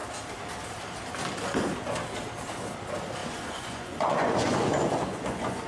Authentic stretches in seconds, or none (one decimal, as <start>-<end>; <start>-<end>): 0.0-3.2